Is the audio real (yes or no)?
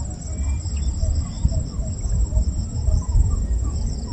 yes